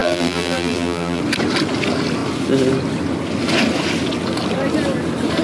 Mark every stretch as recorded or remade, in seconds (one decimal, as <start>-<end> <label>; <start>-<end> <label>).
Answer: 0.0-1.2 remade; 1.2-5.4 recorded